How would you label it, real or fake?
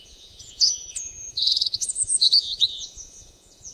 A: fake